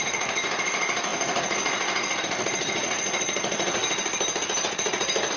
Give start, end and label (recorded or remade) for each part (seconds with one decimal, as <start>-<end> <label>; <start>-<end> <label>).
0.0-3.8 remade; 3.8-4.4 recorded; 4.4-5.4 remade